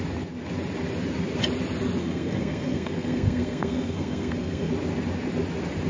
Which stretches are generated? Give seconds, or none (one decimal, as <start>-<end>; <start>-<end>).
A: 2.0-4.7